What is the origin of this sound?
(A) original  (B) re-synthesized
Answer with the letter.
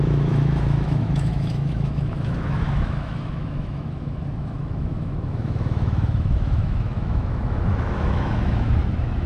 B